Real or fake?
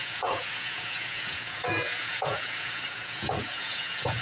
fake